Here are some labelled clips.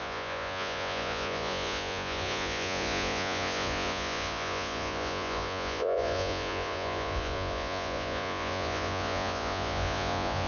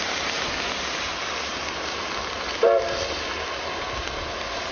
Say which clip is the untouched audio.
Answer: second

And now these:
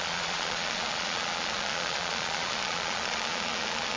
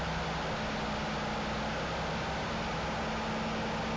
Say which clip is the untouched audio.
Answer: second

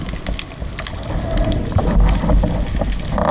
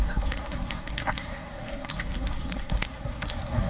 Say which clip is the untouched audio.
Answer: first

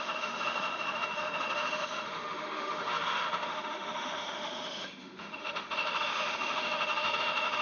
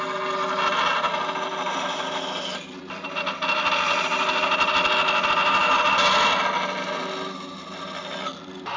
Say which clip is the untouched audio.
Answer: second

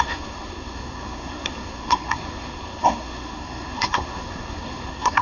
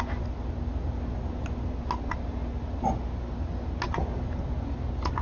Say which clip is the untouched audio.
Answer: second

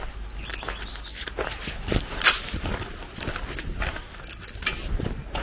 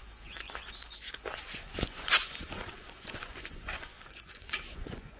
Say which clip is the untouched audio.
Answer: first